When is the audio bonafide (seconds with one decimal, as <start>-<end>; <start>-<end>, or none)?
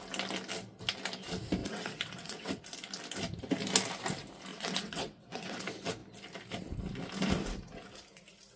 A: 0.0-1.6; 2.6-4.5; 5.6-8.6